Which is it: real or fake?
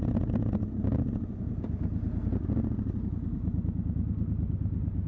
real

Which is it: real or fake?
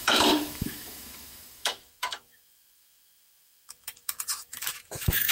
fake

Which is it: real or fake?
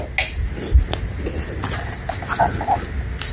real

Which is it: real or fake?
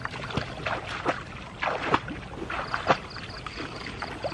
fake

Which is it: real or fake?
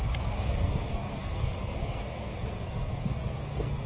fake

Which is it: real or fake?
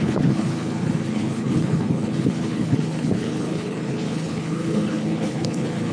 fake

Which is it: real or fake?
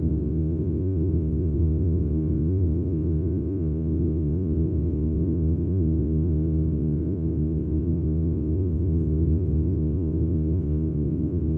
fake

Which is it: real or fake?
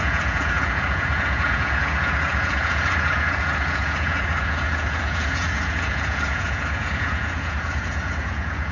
fake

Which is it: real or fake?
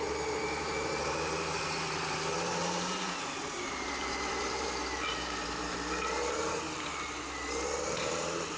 fake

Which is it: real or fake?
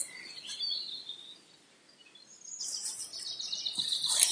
real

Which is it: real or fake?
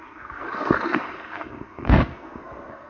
fake